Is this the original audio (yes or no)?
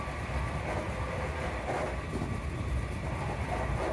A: yes